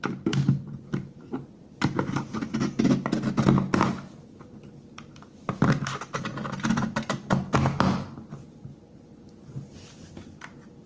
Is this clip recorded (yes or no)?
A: yes